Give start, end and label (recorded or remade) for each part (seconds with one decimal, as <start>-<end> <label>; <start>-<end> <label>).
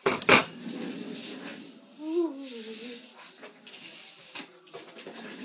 0.0-5.4 recorded